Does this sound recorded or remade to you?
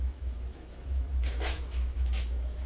remade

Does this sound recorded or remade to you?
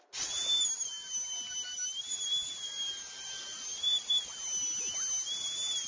recorded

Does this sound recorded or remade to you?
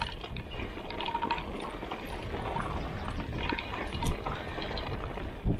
recorded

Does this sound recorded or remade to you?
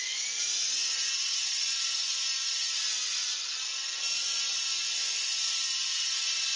recorded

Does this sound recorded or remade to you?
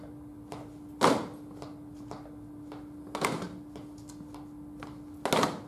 recorded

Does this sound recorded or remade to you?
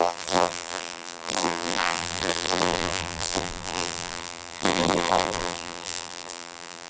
remade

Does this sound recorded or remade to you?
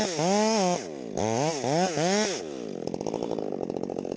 recorded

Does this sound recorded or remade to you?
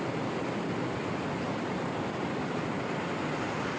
recorded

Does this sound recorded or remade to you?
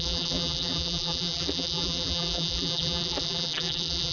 remade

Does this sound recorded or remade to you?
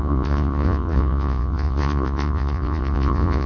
remade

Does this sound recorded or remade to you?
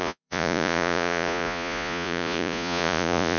remade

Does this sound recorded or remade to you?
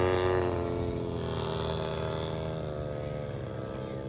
recorded